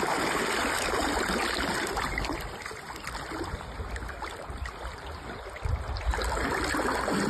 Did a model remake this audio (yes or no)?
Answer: no